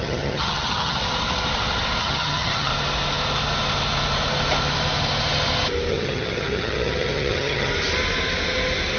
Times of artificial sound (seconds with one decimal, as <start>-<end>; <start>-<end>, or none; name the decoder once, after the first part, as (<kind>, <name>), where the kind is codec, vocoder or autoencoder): 0.0-1.0 (vocoder, HiFi-GAN); 2.0-2.7; 5.9-7.7

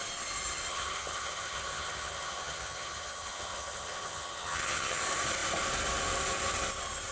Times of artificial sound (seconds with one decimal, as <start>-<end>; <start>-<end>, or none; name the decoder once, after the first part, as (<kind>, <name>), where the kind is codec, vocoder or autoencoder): 0.7-5.0 (vocoder, HiFi-GAN)

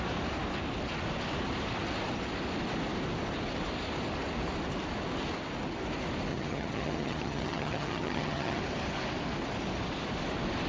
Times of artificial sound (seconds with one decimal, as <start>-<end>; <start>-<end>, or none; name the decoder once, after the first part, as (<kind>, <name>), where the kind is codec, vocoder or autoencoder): 6.3-8.6 (vocoder, HiFi-GAN)

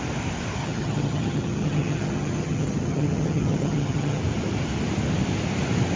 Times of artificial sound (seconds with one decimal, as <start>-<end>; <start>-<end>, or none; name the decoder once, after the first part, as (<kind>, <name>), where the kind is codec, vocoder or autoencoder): 0.6-4.2 (vocoder, HiFi-GAN)

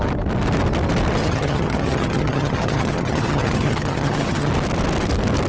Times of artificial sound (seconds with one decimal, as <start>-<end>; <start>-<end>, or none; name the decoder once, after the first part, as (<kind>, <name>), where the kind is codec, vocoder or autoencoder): 1.2-4.5 (vocoder, HiFi-GAN)

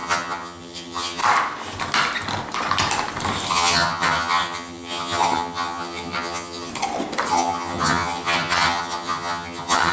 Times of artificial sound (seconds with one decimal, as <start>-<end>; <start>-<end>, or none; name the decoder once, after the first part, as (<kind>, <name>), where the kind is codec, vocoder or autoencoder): 0.0-1.2 (vocoder, HiFi-GAN); 3.5-6.7; 7.3-9.9